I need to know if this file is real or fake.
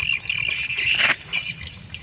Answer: real